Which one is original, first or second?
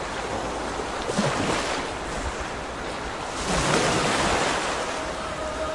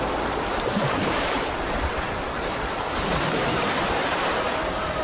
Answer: first